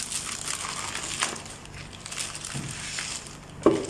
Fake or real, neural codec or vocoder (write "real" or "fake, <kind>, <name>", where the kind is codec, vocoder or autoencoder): real